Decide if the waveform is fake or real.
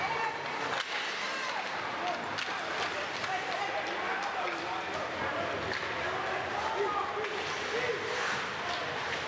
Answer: real